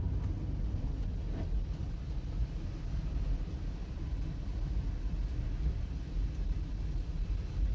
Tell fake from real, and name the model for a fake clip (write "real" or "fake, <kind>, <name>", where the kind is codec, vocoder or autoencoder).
real